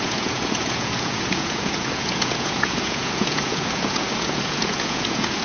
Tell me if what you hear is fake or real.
fake